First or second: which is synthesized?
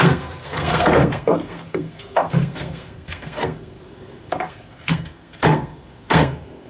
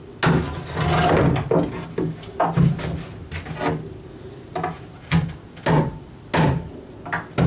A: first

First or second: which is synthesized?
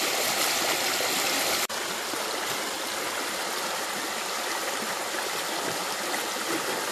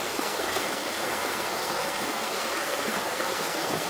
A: second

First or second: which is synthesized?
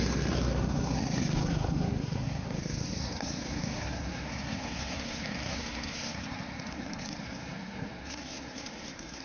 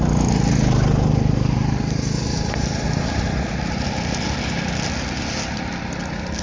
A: first